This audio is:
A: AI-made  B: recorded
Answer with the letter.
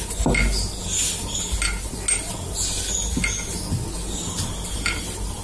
B